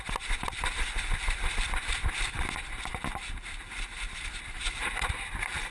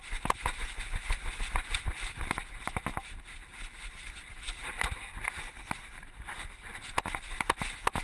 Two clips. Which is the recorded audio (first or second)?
second